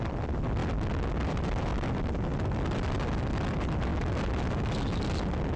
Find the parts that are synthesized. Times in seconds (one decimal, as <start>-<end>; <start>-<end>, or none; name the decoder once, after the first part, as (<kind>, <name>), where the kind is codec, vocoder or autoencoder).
0.0-0.6 (vocoder, BigVGAN v2); 1.1-3.9; 4.8-5.6

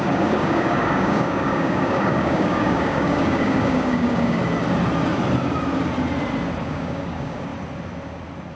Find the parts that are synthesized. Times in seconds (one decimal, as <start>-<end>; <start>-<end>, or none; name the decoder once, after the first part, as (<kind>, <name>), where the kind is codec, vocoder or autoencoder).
0.0-4.4 (codec, DAC); 6.6-7.5

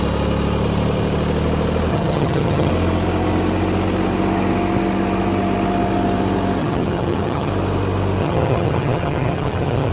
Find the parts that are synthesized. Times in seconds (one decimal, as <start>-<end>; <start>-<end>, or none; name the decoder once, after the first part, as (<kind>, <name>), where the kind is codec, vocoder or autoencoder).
1.9-2.7 (vocoder, HiFi-GAN); 6.6-7.5; 8.2-9.9

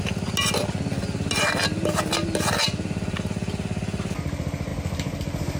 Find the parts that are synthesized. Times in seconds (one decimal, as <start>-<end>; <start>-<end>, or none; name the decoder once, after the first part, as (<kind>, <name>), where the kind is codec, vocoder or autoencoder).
none

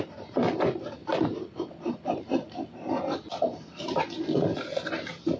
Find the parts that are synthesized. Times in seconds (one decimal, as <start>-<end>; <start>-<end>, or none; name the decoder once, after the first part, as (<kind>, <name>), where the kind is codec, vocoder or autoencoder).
1.0-4.2 (vocoder, BigVGAN v2)

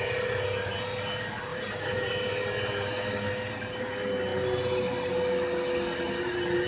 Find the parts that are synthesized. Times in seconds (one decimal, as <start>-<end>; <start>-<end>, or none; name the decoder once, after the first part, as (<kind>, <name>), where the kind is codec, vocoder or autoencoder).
1.5-2.1 (vocoder, BigVGAN v2)

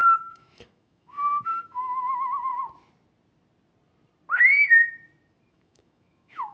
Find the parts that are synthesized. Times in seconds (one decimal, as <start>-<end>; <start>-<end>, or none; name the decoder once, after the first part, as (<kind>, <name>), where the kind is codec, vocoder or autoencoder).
0.0-2.5 (autoencoder, DAC-VAE); 5.5-6.5

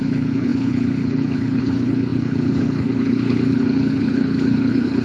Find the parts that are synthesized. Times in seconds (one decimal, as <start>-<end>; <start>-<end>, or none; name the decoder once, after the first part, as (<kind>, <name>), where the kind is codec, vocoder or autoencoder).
0.0-5.0 (codec, HILCodec)